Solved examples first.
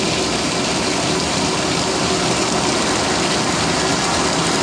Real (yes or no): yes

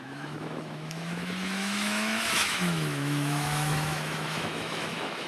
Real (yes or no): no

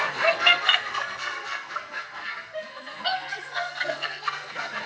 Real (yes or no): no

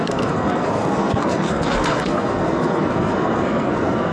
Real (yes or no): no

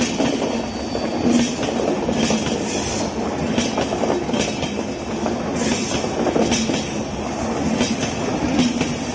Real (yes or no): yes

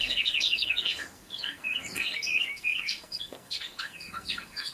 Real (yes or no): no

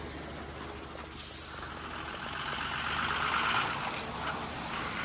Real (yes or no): yes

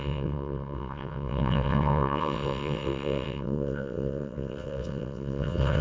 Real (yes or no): no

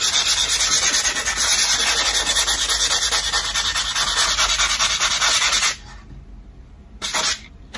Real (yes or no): yes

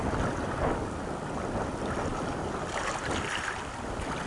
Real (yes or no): yes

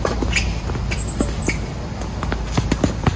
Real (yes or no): yes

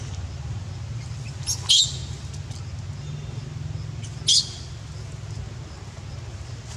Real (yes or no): yes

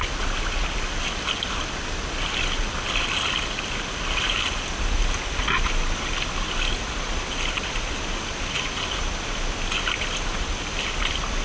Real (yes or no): yes